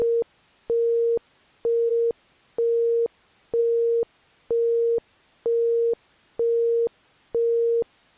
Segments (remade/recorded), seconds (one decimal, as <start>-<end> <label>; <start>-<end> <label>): 0.0-8.2 recorded